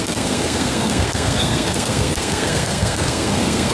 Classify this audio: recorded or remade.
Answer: remade